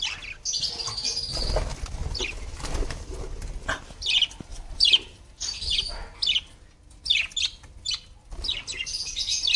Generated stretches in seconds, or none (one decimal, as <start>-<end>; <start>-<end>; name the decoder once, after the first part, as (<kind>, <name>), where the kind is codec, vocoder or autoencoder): 4.5-5.8 (vocoder, BigVGAN v2)